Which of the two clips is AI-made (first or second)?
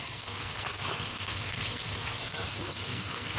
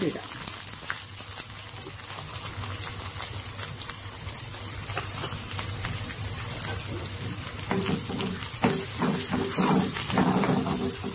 first